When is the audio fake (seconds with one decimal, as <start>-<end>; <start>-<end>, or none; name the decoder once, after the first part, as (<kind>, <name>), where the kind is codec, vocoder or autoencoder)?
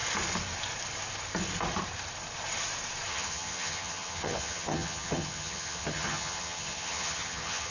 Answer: 3.1-7.7 (vocoder, HiFi-GAN)